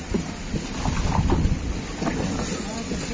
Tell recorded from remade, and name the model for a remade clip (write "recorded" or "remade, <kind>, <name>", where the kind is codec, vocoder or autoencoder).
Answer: recorded